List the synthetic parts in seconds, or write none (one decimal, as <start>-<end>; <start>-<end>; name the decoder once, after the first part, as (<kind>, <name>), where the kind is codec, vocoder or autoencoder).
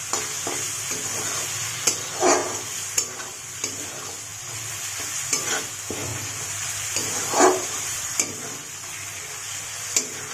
6.1-8.4 (vocoder, BigVGAN v2)